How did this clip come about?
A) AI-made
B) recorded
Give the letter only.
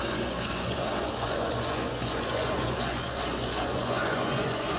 A